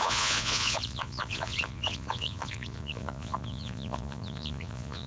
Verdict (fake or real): fake